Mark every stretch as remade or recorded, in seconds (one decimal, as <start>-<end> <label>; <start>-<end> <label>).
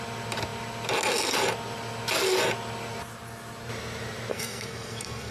0.0-4.3 recorded; 4.3-5.3 remade